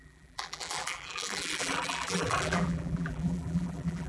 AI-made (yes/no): yes